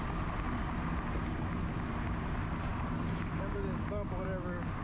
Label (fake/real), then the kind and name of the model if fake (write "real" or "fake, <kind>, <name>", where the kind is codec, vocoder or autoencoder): real